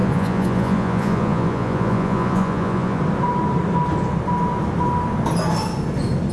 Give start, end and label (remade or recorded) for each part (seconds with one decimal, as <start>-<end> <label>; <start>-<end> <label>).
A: 0.0-3.0 remade; 3.0-6.3 recorded

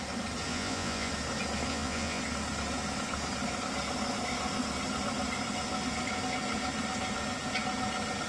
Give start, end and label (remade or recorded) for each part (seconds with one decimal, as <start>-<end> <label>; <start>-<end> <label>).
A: 0.0-0.5 recorded; 0.5-1.1 remade; 1.1-1.7 recorded; 1.7-2.2 remade; 2.2-8.3 recorded

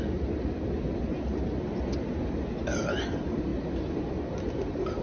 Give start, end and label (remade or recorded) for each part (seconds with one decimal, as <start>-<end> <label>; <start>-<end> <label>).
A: 0.0-5.0 recorded

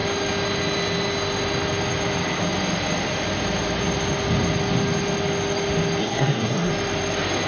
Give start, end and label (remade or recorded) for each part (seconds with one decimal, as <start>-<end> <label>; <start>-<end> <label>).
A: 0.0-6.0 recorded; 6.0-6.7 remade; 6.7-7.5 recorded